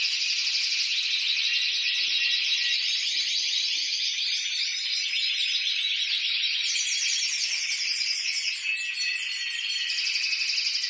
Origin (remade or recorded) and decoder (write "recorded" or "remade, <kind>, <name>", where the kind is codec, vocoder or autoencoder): recorded